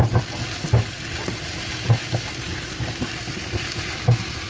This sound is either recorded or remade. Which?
recorded